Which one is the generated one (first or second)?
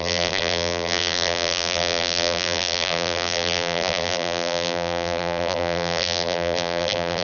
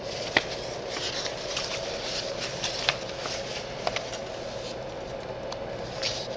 first